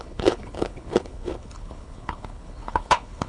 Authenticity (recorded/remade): remade